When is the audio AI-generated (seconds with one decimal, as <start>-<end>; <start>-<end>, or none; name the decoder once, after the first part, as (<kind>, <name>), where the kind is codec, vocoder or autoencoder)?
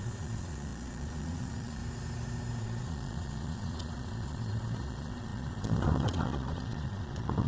0.0-1.8 (vocoder, Vocos); 2.6-7.5